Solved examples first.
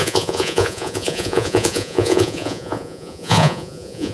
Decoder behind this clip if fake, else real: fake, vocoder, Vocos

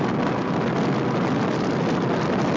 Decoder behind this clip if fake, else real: real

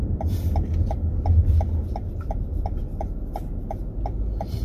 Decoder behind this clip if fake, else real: real